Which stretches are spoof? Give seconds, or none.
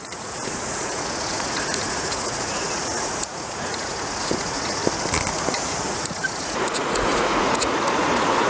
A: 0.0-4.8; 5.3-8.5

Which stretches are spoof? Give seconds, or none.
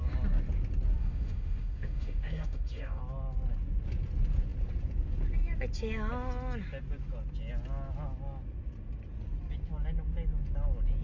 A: 1.0-3.0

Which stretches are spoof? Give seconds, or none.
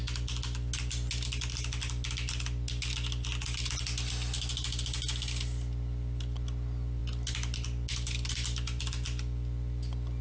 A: none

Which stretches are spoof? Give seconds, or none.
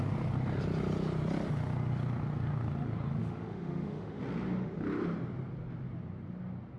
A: 3.2-4.2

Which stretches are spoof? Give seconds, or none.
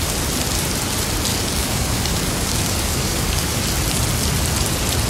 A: 1.3-3.6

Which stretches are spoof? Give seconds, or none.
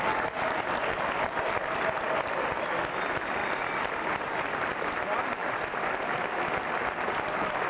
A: none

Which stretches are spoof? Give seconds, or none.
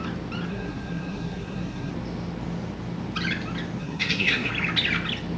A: 0.5-1.9; 3.8-4.5